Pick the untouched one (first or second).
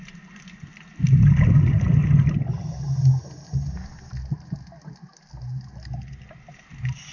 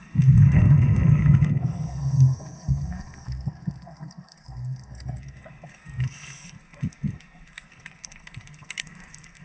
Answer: first